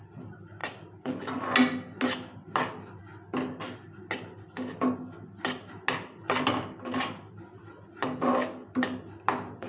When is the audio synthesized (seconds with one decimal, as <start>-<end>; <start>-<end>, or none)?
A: none